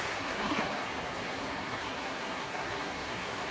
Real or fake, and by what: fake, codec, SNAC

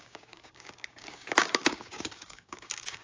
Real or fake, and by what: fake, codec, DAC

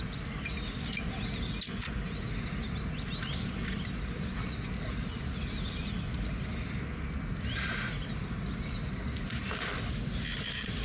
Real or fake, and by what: real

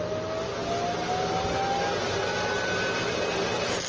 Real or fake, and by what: real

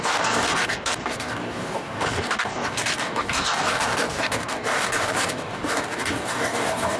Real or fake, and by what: fake, codec, DAC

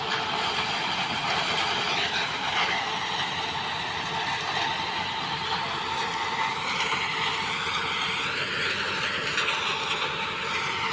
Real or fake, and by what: real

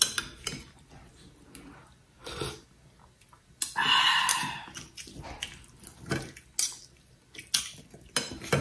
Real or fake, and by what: real